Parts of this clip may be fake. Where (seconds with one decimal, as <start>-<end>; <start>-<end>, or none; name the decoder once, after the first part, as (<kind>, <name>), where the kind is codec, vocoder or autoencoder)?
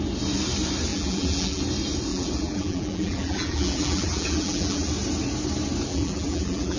0.9-1.6 (vocoder, BigVGAN v2); 2.1-4.9; 5.9-6.8